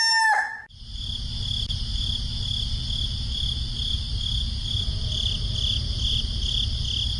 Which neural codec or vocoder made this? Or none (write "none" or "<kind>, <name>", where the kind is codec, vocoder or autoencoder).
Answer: none